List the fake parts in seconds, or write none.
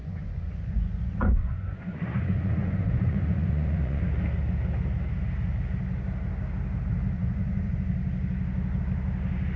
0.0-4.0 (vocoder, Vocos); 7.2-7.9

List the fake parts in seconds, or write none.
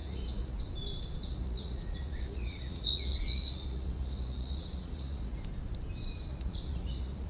0.0-0.6 (vocoder, Vocos); 1.3-5.4; 6.3-7.3